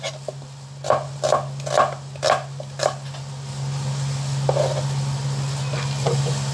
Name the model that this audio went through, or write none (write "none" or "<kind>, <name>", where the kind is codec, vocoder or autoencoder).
none